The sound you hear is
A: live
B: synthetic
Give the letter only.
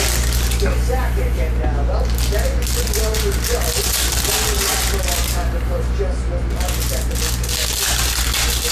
A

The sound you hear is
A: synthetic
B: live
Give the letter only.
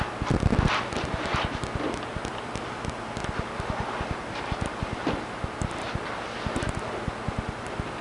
B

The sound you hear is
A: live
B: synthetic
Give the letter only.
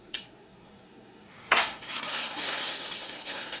B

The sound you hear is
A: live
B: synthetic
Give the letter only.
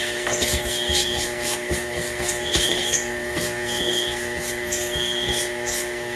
B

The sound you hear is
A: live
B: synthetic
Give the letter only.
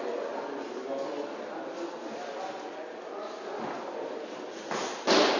A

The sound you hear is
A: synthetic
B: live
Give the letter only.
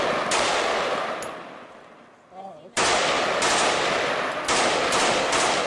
B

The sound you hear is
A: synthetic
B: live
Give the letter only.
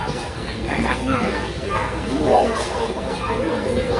A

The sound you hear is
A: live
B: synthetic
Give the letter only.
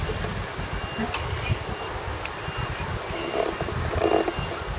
A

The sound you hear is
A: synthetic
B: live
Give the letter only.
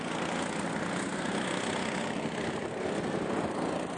B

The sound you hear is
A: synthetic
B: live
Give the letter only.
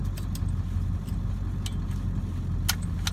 B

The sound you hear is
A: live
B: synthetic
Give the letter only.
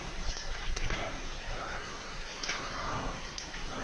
B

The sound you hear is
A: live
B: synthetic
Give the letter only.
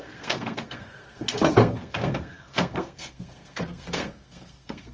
B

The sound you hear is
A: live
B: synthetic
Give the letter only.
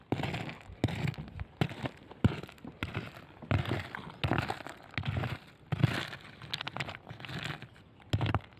A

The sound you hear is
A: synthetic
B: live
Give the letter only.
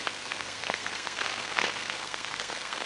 A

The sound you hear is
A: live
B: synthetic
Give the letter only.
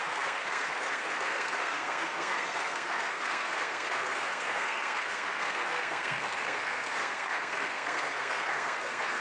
B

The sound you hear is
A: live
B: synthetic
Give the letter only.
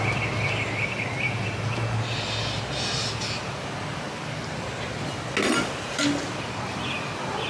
A